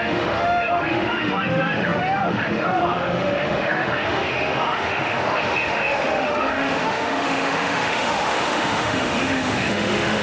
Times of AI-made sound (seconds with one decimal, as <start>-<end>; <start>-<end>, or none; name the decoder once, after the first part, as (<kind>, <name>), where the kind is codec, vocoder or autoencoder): 0.0-10.2 (autoencoder, DAC-VAE)